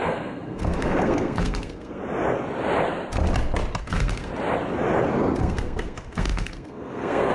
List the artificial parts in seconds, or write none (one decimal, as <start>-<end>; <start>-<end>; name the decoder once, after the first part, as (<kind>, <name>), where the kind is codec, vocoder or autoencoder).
0.0-2.0 (codec, SNAC); 3.8-4.3; 5.4-7.3